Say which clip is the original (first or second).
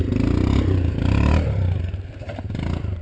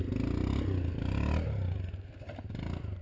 second